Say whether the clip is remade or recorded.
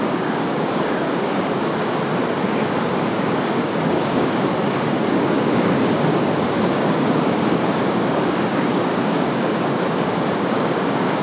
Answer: remade